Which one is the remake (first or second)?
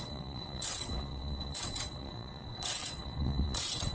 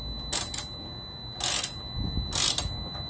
first